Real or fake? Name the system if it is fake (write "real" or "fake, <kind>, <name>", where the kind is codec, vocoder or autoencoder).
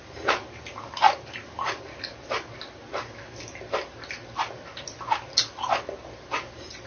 real